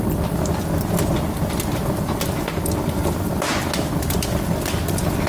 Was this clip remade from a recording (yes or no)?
no